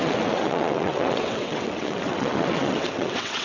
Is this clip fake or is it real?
fake